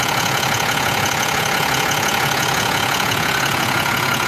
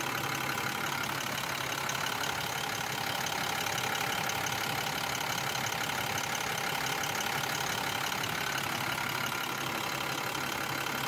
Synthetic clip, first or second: first